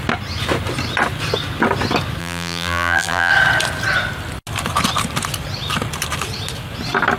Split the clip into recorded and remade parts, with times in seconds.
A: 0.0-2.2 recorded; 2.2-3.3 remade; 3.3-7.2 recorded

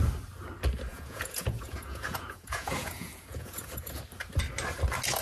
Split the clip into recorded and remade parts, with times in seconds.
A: 0.0-0.9 recorded; 0.9-4.0 remade; 4.0-5.2 recorded

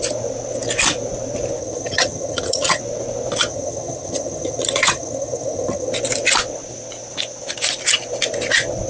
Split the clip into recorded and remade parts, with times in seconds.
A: 0.0-1.6 recorded; 1.6-2.8 remade; 2.8-3.5 recorded; 3.5-5.9 remade; 5.9-8.9 recorded

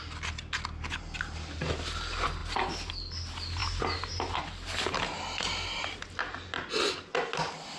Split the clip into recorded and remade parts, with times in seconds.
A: 0.0-7.8 recorded